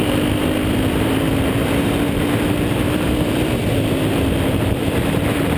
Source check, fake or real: fake